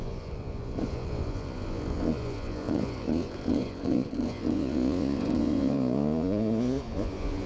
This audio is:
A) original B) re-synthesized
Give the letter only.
B